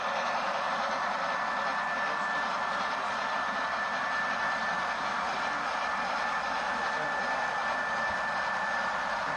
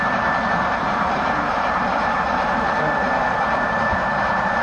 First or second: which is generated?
second